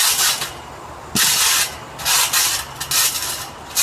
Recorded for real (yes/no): yes